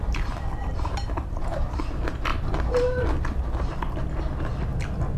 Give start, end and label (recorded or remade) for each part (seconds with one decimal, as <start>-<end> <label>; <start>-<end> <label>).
0.0-0.7 recorded; 0.7-1.8 remade; 1.8-2.3 recorded; 2.3-3.1 remade; 3.1-5.2 recorded